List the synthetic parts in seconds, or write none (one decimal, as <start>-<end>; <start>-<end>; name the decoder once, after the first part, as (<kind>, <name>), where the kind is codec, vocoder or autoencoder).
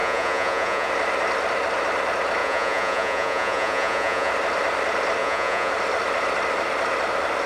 0.0-0.9 (vocoder, Vocos); 2.4-4.3; 5.2-5.7